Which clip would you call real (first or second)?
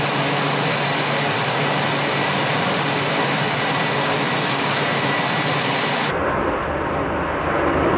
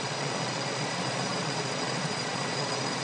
first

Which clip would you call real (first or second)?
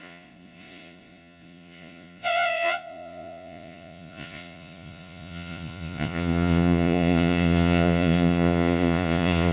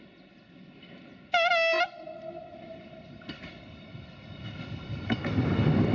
second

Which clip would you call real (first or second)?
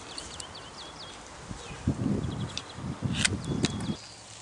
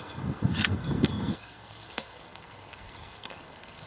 first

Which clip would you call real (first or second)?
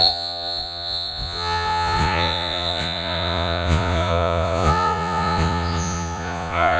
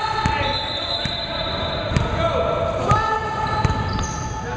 second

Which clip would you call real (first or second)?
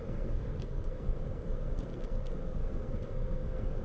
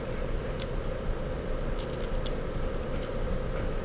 second